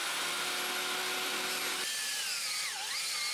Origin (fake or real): real